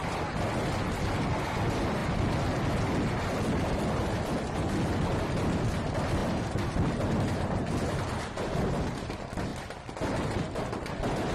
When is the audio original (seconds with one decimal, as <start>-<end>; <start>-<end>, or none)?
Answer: 0.0-9.5; 10.7-11.3